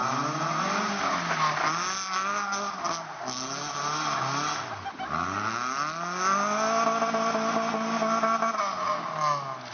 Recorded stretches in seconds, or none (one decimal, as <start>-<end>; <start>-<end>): 0.0-9.7